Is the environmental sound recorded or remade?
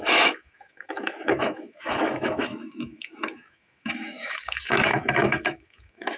remade